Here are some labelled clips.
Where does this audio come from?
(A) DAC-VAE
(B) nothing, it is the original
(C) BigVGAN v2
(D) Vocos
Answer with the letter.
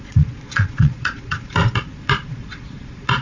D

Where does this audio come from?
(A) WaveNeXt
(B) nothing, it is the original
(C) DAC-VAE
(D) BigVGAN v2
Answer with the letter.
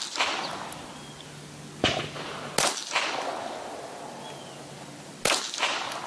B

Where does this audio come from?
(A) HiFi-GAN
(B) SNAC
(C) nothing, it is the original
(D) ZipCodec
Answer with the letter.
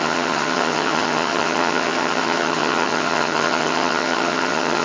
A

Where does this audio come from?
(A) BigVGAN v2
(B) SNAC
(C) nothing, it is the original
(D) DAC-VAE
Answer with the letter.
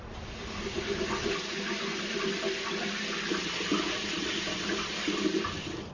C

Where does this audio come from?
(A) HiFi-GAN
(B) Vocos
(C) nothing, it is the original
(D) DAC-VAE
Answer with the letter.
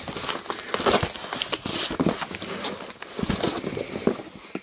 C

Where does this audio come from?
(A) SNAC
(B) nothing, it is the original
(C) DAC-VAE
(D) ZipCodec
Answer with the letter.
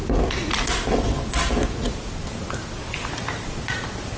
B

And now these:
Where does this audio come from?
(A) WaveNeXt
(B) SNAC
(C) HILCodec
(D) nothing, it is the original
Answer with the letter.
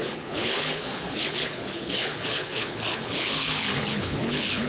C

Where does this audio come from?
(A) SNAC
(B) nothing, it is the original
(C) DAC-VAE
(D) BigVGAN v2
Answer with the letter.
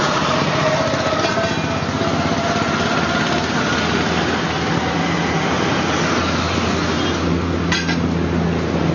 B